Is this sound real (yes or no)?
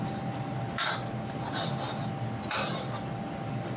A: yes